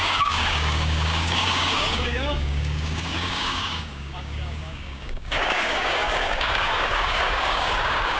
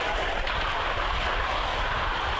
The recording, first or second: second